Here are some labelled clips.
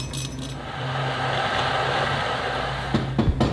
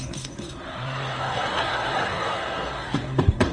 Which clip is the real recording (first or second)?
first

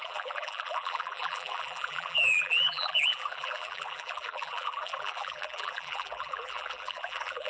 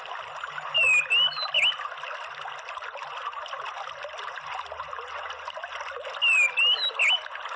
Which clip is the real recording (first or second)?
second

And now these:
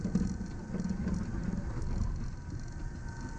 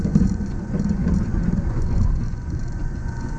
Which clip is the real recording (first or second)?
first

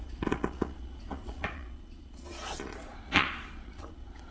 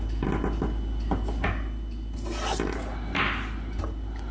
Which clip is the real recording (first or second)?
second